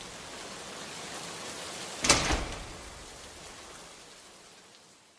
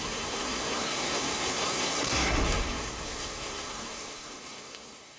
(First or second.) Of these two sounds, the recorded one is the first